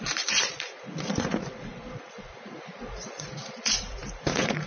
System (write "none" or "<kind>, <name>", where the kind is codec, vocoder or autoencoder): vocoder, Vocos